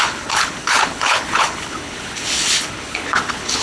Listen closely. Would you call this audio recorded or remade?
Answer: remade